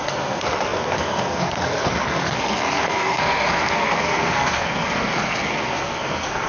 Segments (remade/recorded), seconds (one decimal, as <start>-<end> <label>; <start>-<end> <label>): 0.0-6.5 remade